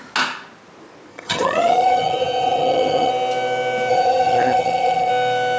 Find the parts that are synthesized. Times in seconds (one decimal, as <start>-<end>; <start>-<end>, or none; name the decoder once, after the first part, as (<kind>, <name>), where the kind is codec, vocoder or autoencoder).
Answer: 1.1-3.1 (vocoder, HiFi-GAN); 3.9-5.1